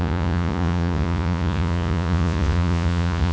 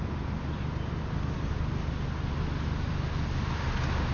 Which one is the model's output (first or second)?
first